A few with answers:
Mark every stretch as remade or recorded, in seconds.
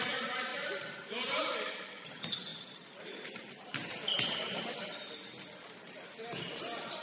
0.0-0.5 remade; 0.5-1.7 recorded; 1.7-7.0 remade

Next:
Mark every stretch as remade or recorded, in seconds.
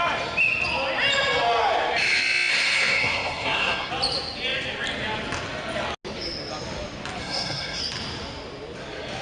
0.0-2.5 recorded; 2.5-3.9 remade; 3.9-7.2 recorded; 7.2-7.8 remade; 7.8-9.2 recorded